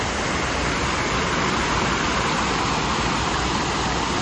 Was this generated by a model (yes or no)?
no